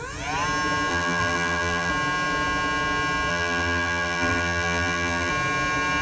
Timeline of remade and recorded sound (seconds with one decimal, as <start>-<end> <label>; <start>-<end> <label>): 0.0-0.9 recorded; 0.9-1.9 remade; 1.9-3.3 recorded; 3.3-5.3 remade; 5.3-6.0 recorded

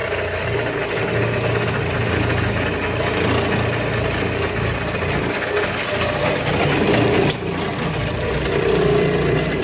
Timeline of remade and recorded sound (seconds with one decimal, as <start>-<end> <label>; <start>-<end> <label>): 0.0-9.6 recorded

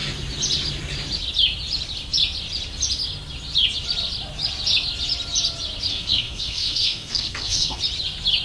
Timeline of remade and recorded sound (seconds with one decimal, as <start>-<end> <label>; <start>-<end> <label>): 0.0-5.9 recorded; 5.9-7.8 remade; 7.8-8.4 recorded

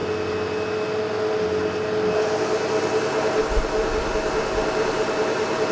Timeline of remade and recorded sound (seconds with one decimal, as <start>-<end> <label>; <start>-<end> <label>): 0.0-5.7 recorded

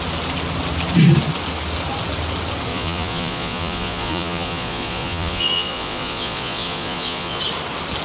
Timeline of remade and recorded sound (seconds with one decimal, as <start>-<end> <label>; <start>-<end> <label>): 0.0-2.7 recorded; 2.7-7.4 remade; 7.4-8.0 recorded

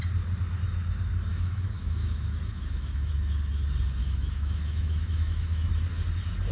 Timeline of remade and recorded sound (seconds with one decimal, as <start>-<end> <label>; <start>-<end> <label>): 0.0-1.3 recorded; 1.3-3.1 remade; 3.1-4.0 recorded; 4.0-5.7 remade; 5.7-6.5 recorded

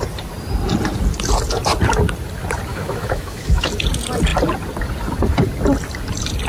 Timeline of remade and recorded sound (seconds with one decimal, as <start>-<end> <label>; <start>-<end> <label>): 0.0-2.7 recorded; 2.7-3.7 remade; 3.7-6.5 recorded